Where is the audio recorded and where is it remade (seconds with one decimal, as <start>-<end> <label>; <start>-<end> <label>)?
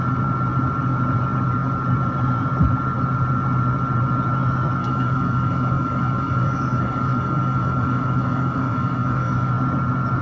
0.0-4.8 recorded; 4.8-9.5 remade; 9.5-10.2 recorded